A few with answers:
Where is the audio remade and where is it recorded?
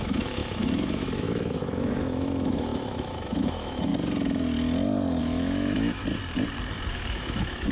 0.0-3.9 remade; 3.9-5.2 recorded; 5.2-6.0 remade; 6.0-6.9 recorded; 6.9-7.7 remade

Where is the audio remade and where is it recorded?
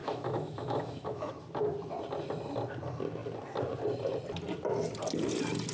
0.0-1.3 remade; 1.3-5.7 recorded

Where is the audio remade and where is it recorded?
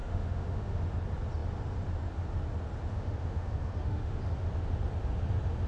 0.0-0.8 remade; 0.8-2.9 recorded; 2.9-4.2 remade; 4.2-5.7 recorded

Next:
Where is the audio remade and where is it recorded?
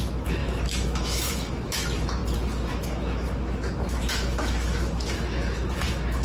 0.0-2.2 remade; 2.2-2.7 recorded; 2.7-6.2 remade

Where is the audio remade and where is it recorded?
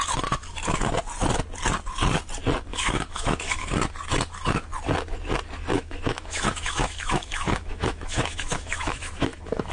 0.0-2.7 recorded; 2.7-3.7 remade; 3.7-5.7 recorded; 5.7-9.7 remade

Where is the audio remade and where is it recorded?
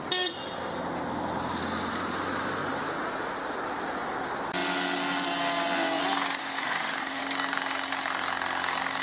0.0-6.4 recorded; 6.4-7.2 remade; 7.2-9.0 recorded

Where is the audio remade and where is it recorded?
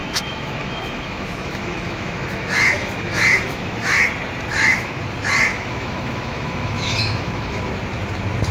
0.0-4.0 remade; 4.0-4.5 recorded; 4.5-5.0 remade; 5.0-5.5 recorded; 5.5-7.6 remade; 7.6-8.5 recorded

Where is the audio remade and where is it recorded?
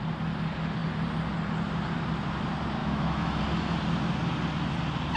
0.0-2.8 recorded; 2.8-3.4 remade; 3.4-5.2 recorded